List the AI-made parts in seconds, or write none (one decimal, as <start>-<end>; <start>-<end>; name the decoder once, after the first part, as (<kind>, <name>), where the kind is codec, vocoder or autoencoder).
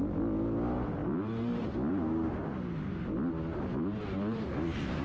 none